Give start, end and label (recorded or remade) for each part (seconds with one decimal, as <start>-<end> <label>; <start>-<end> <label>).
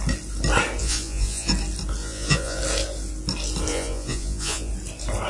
0.0-0.8 recorded; 0.8-1.5 remade; 1.5-2.0 recorded; 2.0-2.6 remade; 2.6-3.7 recorded; 3.7-4.7 remade; 4.7-5.3 recorded